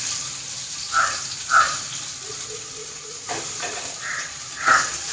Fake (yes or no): no